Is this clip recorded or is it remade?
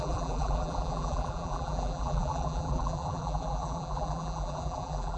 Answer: remade